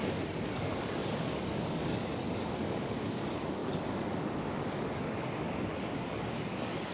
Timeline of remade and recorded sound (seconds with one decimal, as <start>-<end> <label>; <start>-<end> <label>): 0.0-6.9 remade